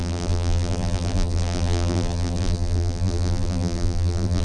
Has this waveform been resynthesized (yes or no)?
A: yes